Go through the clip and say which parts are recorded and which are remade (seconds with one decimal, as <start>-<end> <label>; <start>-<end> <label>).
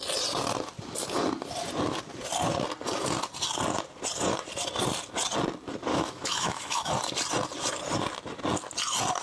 0.0-5.9 recorded; 5.9-6.9 remade; 6.9-9.2 recorded